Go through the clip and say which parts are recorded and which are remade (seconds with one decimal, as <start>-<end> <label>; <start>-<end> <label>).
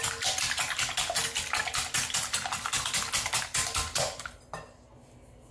0.0-5.5 recorded